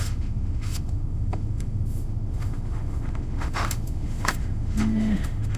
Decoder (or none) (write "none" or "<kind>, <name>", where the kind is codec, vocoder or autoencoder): autoencoder, DAC-VAE